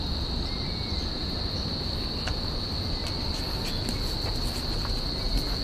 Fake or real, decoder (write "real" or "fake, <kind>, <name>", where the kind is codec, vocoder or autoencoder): real